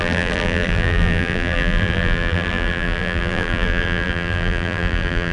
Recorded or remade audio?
remade